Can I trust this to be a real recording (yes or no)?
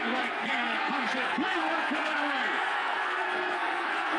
no